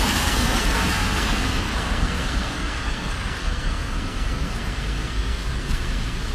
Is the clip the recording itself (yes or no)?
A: no